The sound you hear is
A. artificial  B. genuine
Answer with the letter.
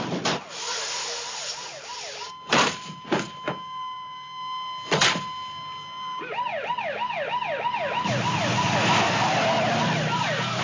B